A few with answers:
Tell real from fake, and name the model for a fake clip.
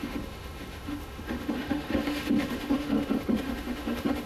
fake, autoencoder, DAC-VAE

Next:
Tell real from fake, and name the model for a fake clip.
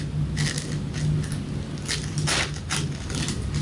real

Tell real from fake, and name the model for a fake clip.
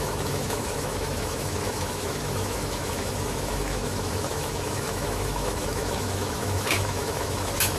fake, autoencoder, DAC-VAE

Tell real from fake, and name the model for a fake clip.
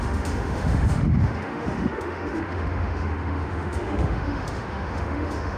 fake, autoencoder, DAC-VAE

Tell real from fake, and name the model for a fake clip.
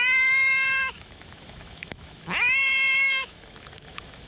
fake, autoencoder, DAC-VAE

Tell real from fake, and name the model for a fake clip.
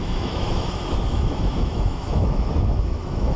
fake, autoencoder, DAC-VAE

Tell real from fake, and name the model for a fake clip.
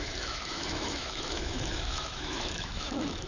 fake, autoencoder, DAC-VAE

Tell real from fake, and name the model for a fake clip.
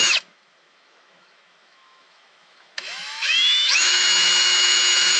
fake, autoencoder, DAC-VAE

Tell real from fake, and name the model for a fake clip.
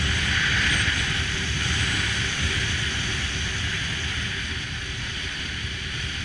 real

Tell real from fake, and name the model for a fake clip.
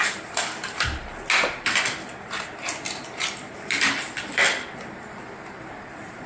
real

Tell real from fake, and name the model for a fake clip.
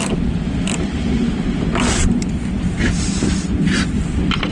real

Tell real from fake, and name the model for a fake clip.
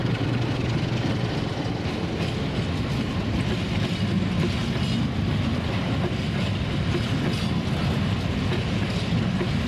real